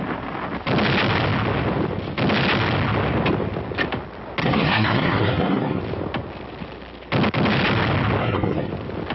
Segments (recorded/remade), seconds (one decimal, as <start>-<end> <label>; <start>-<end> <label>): 0.0-4.4 recorded; 4.4-5.8 remade; 5.8-8.2 recorded; 8.2-8.7 remade; 8.7-9.1 recorded

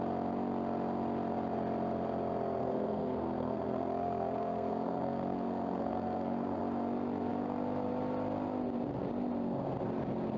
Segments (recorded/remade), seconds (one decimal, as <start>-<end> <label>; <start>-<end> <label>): 0.0-2.6 recorded; 2.6-6.6 remade; 6.6-10.4 recorded

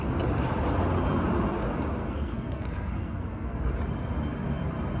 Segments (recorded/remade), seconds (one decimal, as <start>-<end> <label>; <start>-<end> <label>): 0.0-2.0 recorded; 2.0-3.7 remade; 3.7-5.0 recorded

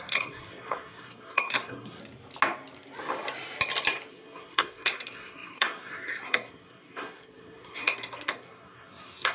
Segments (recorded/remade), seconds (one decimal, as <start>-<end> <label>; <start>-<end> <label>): 0.0-2.0 remade; 2.0-4.1 recorded; 4.1-9.3 remade

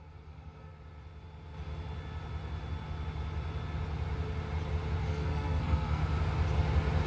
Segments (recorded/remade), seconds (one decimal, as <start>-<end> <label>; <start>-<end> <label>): 0.0-0.7 remade; 0.7-5.0 recorded; 5.0-6.0 remade; 6.0-7.1 recorded